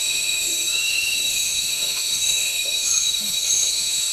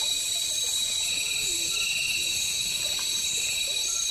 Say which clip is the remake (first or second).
first